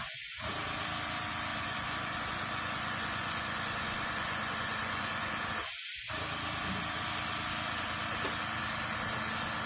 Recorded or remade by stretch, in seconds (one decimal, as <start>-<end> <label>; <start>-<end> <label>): 0.0-1.5 recorded; 1.5-5.5 remade; 5.5-9.7 recorded